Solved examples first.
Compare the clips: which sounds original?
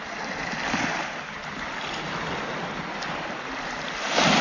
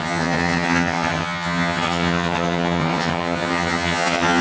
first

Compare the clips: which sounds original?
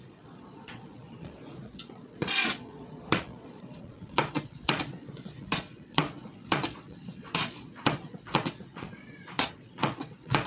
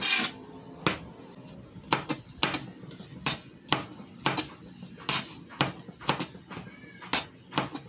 second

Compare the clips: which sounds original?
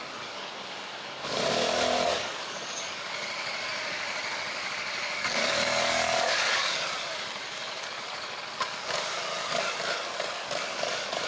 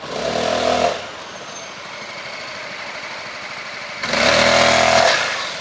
second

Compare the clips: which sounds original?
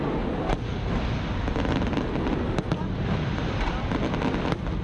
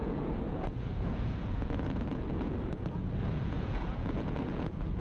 first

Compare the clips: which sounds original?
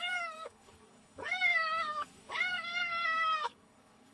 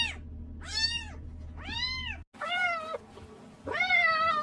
second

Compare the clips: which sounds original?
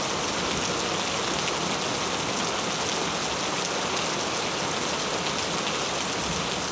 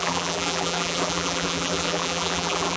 first